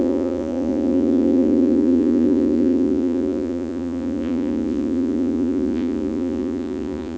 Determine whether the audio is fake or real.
fake